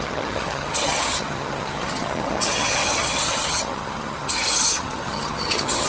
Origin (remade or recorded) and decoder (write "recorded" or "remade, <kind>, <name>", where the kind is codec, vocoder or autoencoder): remade, vocoder, HiFi-GAN